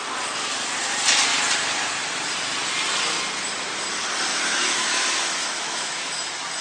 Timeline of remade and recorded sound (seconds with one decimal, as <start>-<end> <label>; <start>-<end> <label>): 0.0-4.3 recorded; 4.3-6.1 remade; 6.1-6.6 recorded